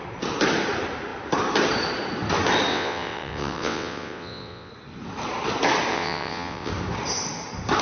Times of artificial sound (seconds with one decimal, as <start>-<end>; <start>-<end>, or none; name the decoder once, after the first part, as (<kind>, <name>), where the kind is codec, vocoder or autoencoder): 2.7-4.7 (vocoder, WaveNeXt); 5.9-6.7